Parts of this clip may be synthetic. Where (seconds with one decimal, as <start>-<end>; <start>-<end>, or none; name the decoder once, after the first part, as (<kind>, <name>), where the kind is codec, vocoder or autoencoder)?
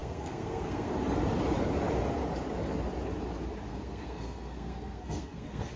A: 0.0-0.9 (codec, SNAC); 3.7-5.8